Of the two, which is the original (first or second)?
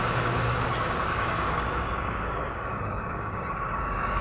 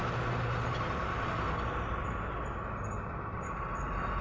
second